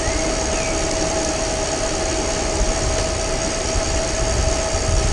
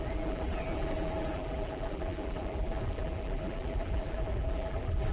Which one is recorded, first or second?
first